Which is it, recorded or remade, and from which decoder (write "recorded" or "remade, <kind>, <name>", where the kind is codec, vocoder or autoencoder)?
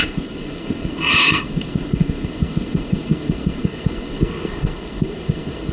remade, codec, SNAC